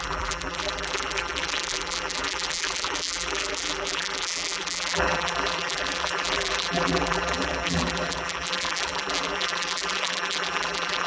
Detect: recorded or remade remade